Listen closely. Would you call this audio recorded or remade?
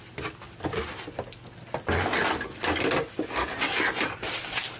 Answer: recorded